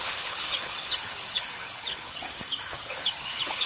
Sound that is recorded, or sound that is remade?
remade